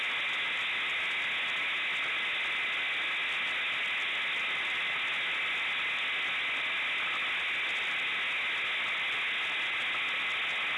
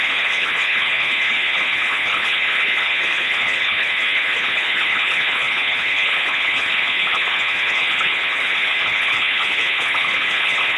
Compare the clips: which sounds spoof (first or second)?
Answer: second